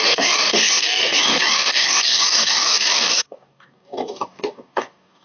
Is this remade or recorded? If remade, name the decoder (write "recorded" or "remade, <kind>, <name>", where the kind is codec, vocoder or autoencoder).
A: remade, codec, DAC